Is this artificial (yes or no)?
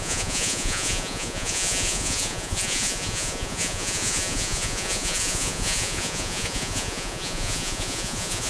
yes